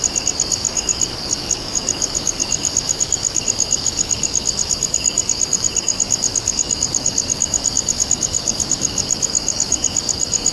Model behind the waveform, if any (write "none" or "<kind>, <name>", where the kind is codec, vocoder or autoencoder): codec, DAC